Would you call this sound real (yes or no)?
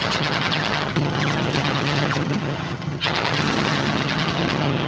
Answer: no